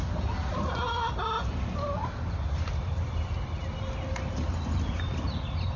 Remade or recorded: recorded